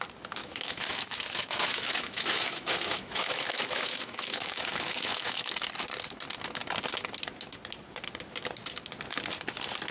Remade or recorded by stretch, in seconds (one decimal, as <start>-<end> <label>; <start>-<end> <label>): 0.0-0.4 recorded; 0.4-5.5 remade; 5.5-9.9 recorded